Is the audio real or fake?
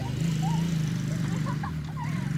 real